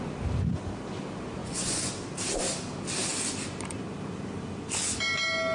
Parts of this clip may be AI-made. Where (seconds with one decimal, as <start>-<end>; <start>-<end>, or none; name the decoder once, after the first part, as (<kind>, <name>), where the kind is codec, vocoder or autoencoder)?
1.4-1.9 (vocoder, Vocos)